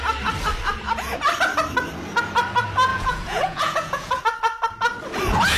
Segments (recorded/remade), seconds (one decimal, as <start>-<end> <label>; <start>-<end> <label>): 0.0-2.9 recorded; 2.9-4.2 remade; 4.2-5.6 recorded